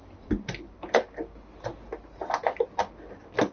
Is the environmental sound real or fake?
real